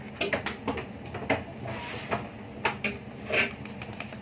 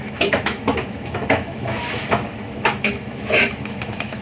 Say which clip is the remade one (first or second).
second